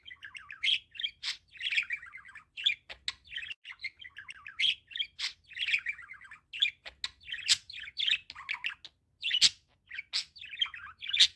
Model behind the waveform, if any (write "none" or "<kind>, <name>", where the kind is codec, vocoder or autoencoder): none